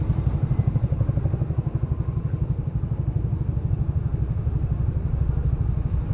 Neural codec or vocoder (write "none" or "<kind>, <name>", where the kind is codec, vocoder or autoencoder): none